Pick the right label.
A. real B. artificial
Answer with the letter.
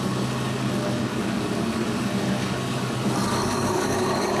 B